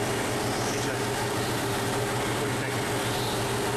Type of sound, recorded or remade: recorded